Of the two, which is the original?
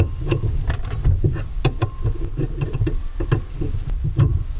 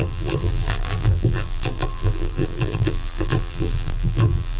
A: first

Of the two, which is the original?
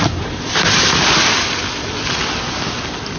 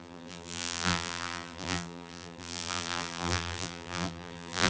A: first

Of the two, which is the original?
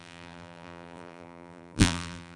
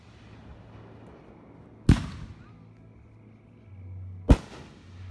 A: second